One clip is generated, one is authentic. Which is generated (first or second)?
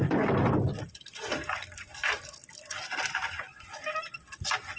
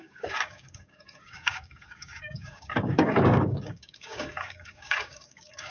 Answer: second